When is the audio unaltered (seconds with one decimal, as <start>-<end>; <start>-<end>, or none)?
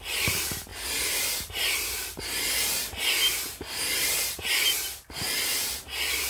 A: 0.0-6.3